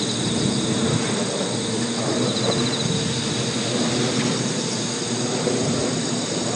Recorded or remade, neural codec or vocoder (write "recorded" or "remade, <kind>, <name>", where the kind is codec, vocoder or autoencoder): recorded